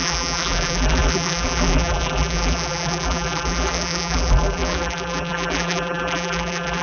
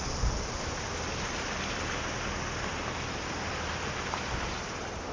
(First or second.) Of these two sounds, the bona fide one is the second